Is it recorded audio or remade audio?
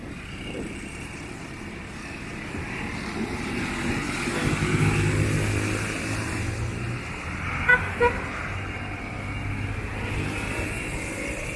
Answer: recorded